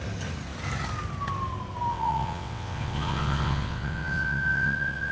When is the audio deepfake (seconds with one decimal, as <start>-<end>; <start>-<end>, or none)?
1.9-5.1